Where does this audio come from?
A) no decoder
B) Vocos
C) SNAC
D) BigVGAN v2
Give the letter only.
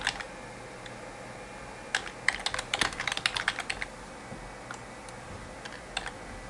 A